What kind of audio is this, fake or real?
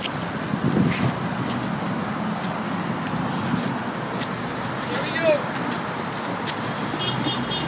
real